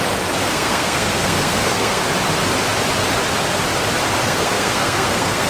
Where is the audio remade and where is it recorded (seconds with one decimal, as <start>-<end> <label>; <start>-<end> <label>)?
0.0-0.4 recorded; 0.4-2.0 remade; 2.0-4.2 recorded; 4.2-5.5 remade